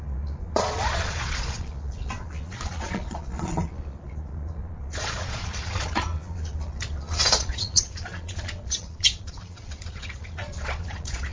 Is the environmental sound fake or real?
fake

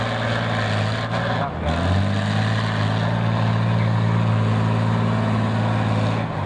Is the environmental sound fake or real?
real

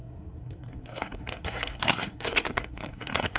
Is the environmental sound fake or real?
fake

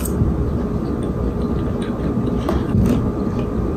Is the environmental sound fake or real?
real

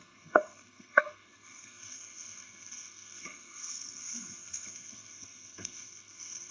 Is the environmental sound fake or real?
fake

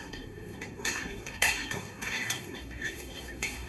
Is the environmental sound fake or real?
fake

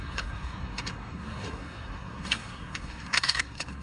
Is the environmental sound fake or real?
fake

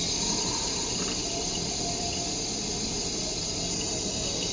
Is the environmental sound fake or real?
real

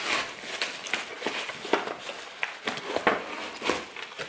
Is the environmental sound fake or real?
real